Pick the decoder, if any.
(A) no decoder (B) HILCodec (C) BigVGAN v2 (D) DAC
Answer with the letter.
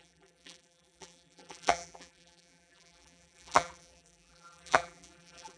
C